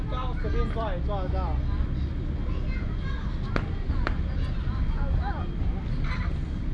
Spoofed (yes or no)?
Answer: no